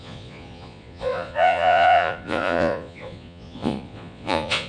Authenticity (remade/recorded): remade